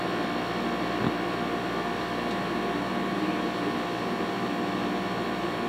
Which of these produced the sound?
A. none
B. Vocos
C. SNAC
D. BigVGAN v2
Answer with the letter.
A